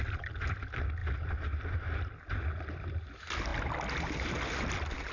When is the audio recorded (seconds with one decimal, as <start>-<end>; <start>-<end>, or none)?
0.0-5.1